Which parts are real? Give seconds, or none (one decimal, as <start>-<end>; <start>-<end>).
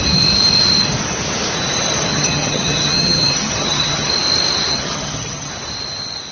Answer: 0.0-2.1; 4.1-4.7; 5.5-6.3